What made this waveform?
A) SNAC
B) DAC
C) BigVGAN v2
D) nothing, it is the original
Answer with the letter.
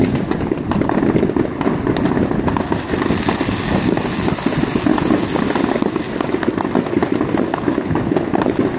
D